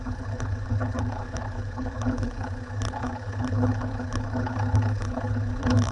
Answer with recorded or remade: remade